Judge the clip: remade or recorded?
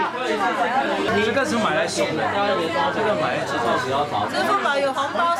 recorded